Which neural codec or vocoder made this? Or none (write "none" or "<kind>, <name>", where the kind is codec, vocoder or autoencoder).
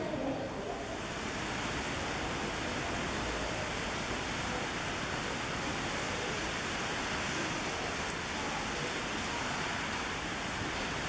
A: none